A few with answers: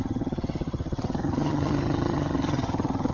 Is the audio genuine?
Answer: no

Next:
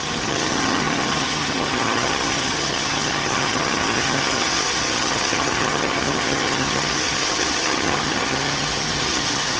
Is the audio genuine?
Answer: no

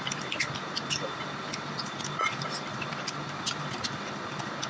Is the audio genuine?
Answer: yes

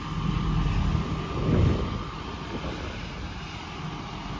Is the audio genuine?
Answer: yes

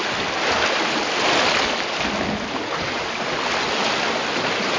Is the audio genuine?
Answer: yes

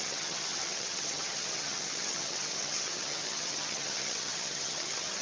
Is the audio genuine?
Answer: no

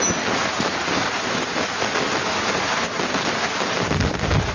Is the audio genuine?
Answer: yes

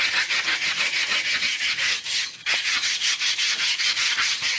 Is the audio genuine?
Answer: no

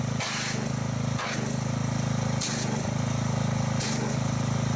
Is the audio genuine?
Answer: yes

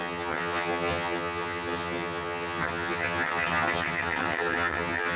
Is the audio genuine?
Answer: no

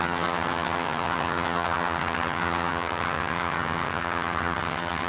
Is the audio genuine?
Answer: no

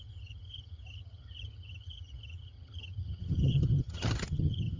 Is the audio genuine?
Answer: no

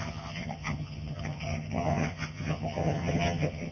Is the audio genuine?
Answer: no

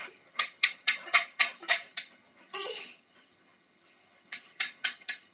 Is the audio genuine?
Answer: no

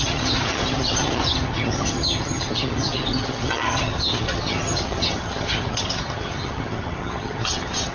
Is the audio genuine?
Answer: no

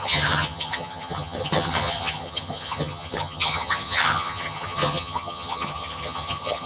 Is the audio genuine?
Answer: no